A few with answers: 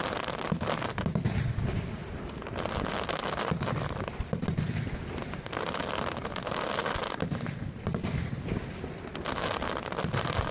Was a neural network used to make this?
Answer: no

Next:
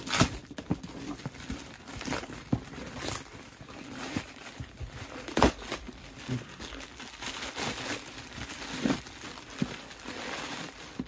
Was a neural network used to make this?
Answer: no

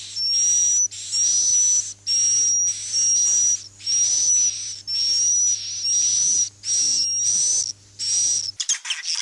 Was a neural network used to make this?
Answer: no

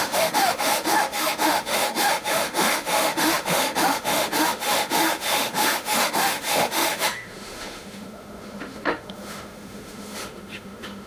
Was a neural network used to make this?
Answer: yes